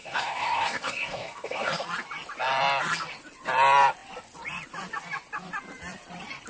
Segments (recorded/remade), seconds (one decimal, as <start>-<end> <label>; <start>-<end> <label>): 0.0-1.7 remade; 1.7-6.5 recorded